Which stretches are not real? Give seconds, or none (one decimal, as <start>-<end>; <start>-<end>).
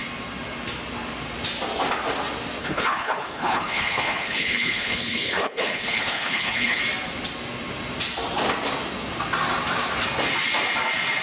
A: 2.6-6.8